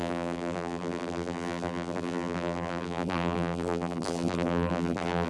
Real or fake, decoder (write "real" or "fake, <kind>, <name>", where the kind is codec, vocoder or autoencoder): fake, vocoder, BigVGAN v2